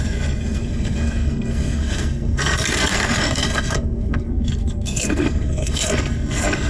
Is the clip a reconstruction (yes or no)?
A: yes